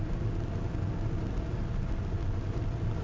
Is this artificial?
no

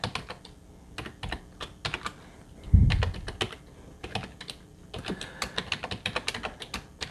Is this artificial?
no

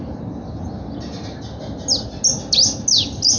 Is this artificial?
no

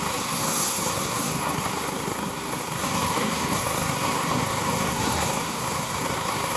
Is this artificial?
yes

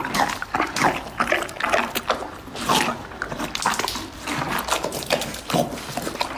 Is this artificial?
no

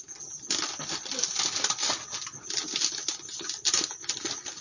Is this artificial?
no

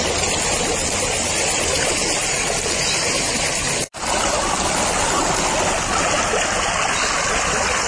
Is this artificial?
no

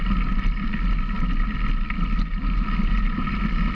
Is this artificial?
no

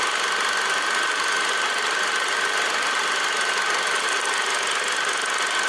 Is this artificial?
no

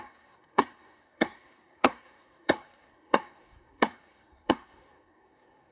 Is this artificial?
yes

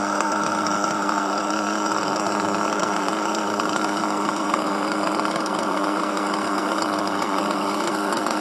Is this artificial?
yes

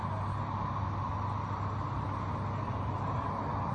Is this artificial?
no